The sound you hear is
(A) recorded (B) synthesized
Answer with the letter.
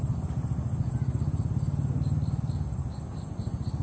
A